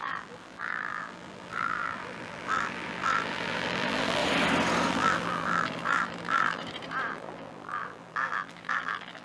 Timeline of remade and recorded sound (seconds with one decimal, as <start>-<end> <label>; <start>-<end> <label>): 0.0-4.2 remade; 4.2-4.9 recorded; 4.9-6.6 remade; 6.6-7.1 recorded; 7.1-9.2 remade